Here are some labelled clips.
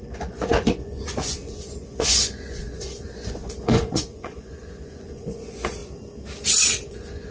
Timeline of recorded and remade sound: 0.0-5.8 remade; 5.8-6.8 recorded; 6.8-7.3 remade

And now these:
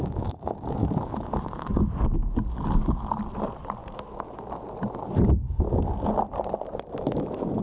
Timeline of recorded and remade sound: 0.0-1.8 remade; 1.8-3.8 recorded; 3.8-4.5 remade; 4.5-5.4 recorded; 5.4-6.1 remade; 6.1-7.6 recorded

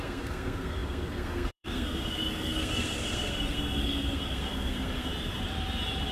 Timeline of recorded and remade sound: 0.0-5.1 remade; 5.1-6.1 recorded

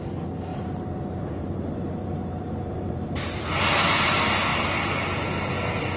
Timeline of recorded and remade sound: 0.0-0.5 recorded; 0.5-4.1 remade; 4.1-6.0 recorded

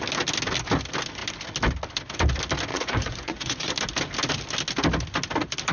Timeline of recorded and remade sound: 0.0-2.7 recorded; 2.7-3.7 remade; 3.7-5.7 recorded

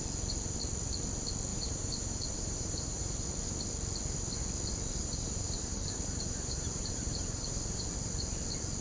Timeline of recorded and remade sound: 0.0-1.5 recorded; 1.5-3.2 remade; 3.2-5.0 recorded; 5.0-7.8 remade; 7.8-8.8 recorded

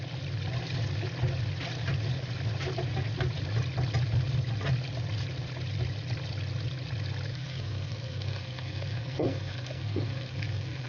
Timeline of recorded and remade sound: 0.0-7.3 recorded; 7.3-10.9 remade